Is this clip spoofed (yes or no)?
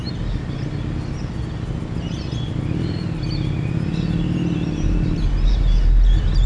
no